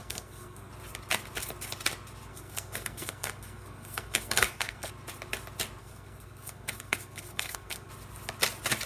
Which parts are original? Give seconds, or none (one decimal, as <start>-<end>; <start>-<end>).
0.7-2.3; 4.9-5.8; 7.9-8.9